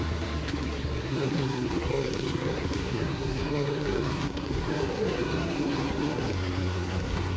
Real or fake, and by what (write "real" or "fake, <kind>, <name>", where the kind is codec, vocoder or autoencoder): fake, codec, SNAC